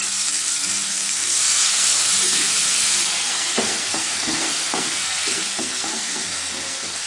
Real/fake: fake